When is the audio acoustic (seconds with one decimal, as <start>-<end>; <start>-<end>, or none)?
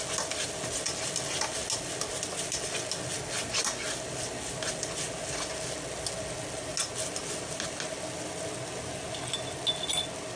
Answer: 0.0-10.4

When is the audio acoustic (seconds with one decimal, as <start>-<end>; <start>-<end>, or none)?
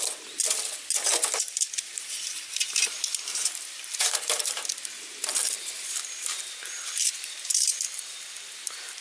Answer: 0.0-1.1; 4.7-5.6; 8.0-9.0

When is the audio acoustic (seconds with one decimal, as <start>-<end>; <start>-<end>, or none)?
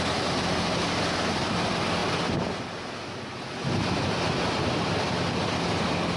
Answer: 0.0-6.2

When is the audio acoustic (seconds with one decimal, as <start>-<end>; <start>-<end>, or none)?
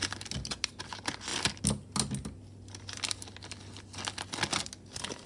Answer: 0.0-5.3